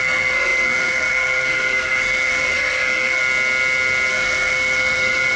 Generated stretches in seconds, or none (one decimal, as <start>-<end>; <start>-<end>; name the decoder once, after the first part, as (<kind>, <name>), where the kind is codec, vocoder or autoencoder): 0.0-3.2 (codec, SNAC); 4.1-5.4